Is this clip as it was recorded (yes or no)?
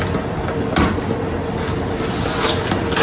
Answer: yes